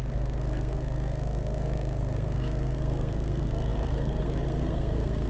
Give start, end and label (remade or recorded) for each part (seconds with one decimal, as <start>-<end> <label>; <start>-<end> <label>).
0.0-5.3 remade